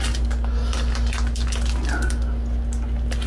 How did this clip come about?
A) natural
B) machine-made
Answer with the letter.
A